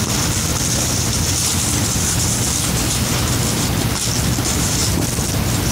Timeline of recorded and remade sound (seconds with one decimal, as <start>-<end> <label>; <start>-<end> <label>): 0.0-0.5 recorded; 0.5-2.3 remade; 2.3-4.8 recorded; 4.8-5.7 remade